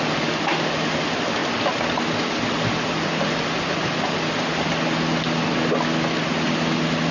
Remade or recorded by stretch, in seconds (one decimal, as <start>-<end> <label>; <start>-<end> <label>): 0.0-7.1 recorded